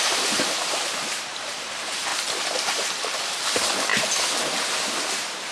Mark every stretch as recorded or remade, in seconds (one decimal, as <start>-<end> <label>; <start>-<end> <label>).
0.0-2.1 remade; 2.1-2.6 recorded; 2.6-3.9 remade; 3.9-4.8 recorded; 4.8-5.5 remade

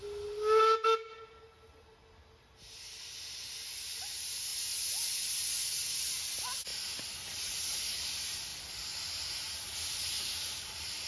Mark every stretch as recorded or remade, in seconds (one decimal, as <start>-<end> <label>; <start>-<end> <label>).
0.0-11.1 recorded

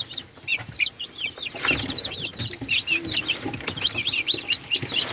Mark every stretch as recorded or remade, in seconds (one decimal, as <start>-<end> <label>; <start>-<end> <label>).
0.0-2.3 recorded; 2.3-3.2 remade; 3.2-5.1 recorded

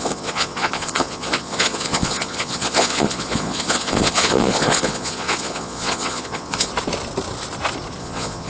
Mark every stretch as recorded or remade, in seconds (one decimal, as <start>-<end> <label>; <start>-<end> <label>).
0.0-6.7 remade; 6.7-8.0 recorded; 8.0-8.5 remade

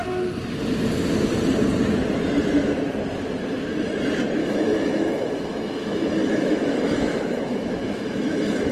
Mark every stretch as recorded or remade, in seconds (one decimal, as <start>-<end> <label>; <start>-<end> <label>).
0.0-4.4 recorded; 4.4-8.7 remade